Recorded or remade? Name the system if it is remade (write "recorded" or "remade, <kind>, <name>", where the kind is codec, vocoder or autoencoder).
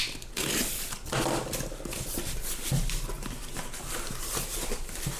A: recorded